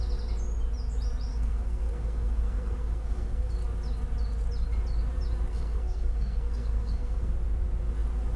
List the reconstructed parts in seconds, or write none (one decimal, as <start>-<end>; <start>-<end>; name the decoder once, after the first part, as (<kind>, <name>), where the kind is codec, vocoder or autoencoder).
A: 1.3-3.5 (codec, SNAC); 5.5-7.3